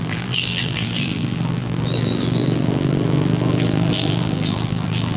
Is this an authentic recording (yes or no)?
no